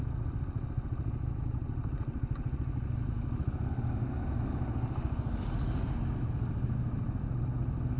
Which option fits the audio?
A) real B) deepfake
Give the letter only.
A